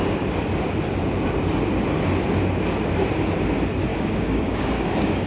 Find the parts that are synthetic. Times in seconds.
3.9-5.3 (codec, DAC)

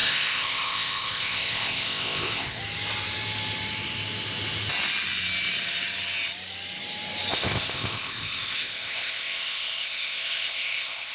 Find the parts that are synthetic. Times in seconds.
0.0-2.6 (codec, ZipCodec); 7.3-11.1